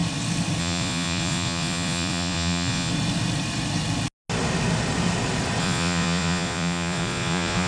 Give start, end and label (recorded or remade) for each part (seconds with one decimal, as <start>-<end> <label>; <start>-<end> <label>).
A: 0.0-0.6 recorded; 0.6-2.9 remade; 2.9-5.6 recorded; 5.6-7.7 remade